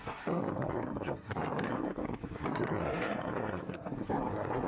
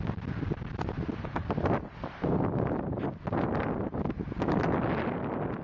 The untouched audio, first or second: second